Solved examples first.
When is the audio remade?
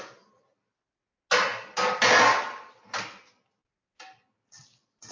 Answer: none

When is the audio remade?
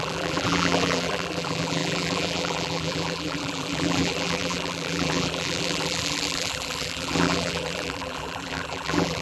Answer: 0.0-9.2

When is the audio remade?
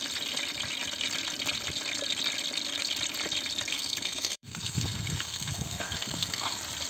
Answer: 3.7-6.5